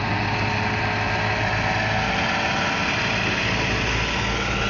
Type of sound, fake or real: real